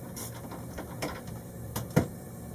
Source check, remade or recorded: remade